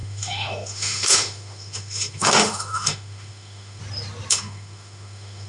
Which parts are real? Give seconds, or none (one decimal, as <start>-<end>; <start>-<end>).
3.8-4.3